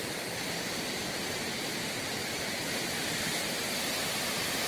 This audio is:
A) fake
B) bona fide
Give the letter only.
A